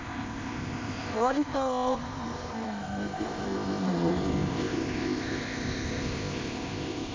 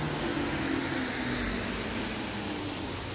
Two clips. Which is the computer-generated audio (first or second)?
first